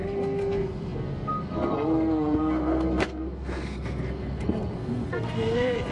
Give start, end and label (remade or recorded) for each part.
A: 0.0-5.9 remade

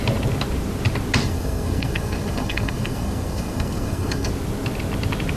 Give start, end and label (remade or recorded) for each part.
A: 0.0-1.2 recorded; 1.2-4.3 remade; 4.3-5.4 recorded